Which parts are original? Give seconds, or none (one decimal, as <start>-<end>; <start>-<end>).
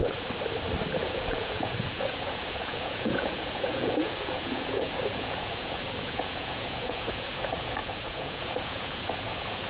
0.0-1.0